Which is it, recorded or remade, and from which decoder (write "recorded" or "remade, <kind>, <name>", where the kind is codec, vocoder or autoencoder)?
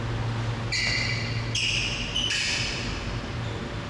recorded